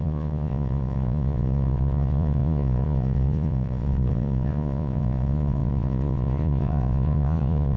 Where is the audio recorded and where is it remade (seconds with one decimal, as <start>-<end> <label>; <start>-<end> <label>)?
0.0-7.8 remade